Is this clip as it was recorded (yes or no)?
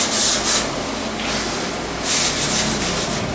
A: yes